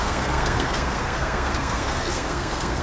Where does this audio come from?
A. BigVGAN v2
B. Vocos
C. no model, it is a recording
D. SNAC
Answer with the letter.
D